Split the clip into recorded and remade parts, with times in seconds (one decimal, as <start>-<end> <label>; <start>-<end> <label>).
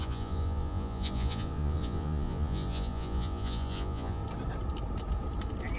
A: 0.0-4.2 remade; 4.2-5.8 recorded